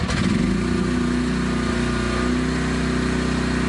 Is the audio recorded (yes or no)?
yes